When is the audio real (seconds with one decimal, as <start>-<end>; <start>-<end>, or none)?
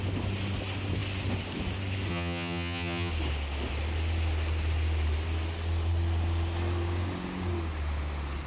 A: 0.0-2.1; 3.1-8.5